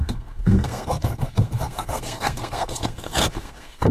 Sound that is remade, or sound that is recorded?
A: remade